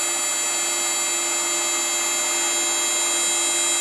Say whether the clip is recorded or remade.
recorded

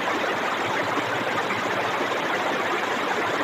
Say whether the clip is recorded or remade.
remade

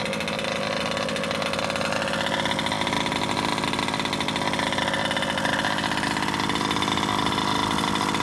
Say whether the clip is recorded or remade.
recorded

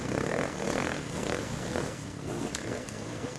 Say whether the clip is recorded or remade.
remade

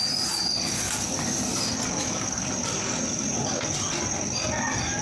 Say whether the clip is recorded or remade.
recorded